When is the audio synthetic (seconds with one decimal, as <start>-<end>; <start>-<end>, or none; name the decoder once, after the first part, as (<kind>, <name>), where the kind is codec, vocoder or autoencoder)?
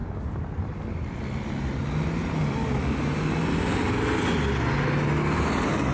none